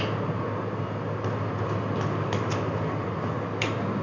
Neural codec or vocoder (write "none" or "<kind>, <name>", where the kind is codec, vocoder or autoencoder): none